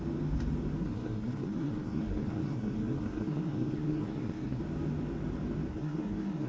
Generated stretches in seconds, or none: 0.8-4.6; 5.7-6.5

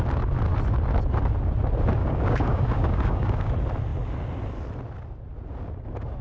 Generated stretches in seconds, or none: 2.0-3.5